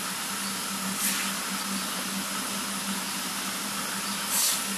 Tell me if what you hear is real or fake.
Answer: real